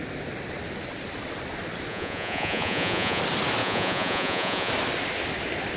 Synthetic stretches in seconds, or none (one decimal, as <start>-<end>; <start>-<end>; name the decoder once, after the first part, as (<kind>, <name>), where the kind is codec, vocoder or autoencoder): 1.9-3.2 (vocoder, Vocos); 3.6-4.7